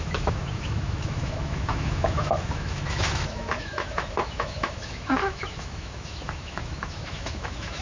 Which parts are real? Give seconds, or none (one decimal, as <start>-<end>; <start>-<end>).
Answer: none